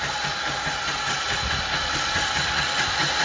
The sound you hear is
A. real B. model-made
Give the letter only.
A